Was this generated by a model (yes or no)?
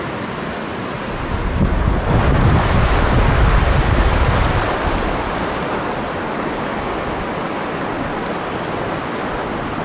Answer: no